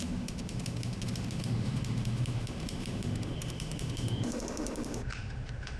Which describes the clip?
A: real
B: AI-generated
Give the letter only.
B